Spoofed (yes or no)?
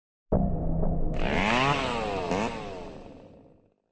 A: no